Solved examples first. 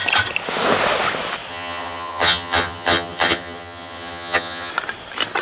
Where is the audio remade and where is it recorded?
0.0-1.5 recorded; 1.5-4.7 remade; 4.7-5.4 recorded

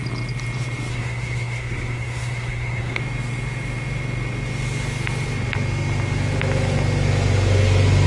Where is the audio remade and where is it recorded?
0.0-0.9 recorded; 0.9-3.0 remade; 3.0-8.1 recorded

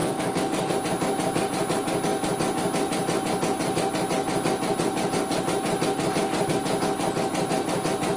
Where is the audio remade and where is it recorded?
0.0-0.7 remade; 0.7-8.2 recorded

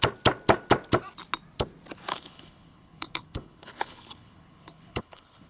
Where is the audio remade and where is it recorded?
0.0-2.1 recorded; 2.1-5.5 remade